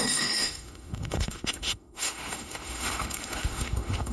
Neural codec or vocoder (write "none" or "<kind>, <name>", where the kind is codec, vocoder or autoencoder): autoencoder, DAC-VAE